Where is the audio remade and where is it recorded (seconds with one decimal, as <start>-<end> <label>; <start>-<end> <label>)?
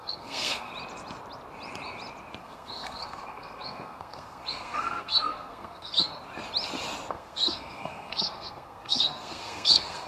0.0-0.7 remade; 0.7-2.4 recorded; 2.4-6.1 remade; 6.1-7.1 recorded; 7.1-10.1 remade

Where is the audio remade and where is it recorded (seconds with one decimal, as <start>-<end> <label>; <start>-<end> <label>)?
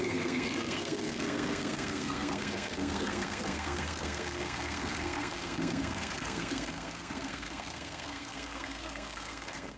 0.0-9.8 remade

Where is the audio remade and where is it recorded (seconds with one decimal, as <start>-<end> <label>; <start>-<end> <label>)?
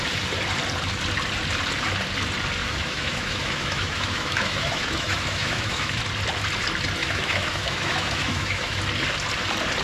0.0-2.6 recorded; 2.6-6.0 remade; 6.0-7.0 recorded; 7.0-8.8 remade; 8.8-9.8 recorded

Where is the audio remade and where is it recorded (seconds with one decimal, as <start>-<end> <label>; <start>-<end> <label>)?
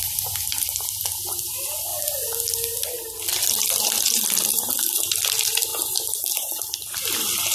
0.0-7.5 recorded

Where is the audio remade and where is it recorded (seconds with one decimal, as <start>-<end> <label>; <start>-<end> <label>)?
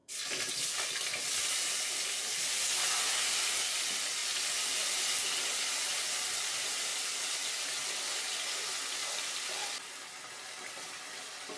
0.0-0.5 remade; 0.5-6.9 recorded; 6.9-7.5 remade; 7.5-9.0 recorded; 9.0-9.5 remade; 9.5-11.6 recorded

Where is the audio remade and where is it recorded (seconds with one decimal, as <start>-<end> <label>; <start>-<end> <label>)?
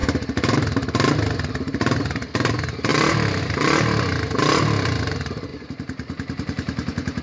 0.0-5.5 recorded; 5.5-7.2 remade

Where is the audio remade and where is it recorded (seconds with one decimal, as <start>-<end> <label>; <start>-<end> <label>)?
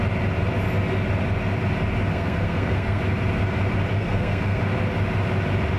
0.0-2.1 recorded; 2.1-3.0 remade; 3.0-4.0 recorded; 4.0-4.6 remade; 4.6-5.8 recorded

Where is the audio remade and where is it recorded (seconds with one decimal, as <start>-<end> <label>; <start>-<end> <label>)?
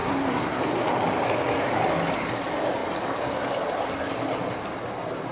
0.0-0.6 remade; 0.6-5.3 recorded